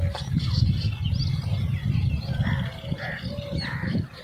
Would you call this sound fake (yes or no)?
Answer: no